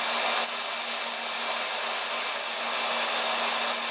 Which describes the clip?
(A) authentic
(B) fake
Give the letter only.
A